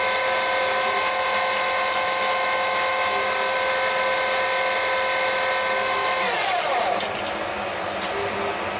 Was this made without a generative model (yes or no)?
yes